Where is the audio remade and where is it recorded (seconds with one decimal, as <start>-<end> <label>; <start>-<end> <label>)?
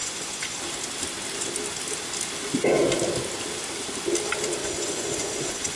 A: 0.0-0.6 remade; 0.6-4.6 recorded; 4.6-5.8 remade